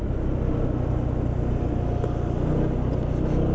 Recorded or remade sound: recorded